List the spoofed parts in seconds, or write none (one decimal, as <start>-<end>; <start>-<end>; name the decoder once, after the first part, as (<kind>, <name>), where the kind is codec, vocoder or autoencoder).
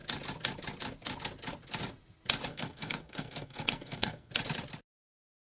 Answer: 2.5-4.3 (codec, SNAC)